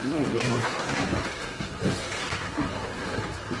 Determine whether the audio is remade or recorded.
remade